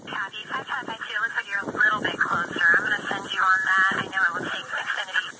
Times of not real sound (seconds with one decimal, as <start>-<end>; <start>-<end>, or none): none